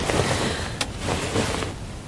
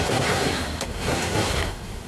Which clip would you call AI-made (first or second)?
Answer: second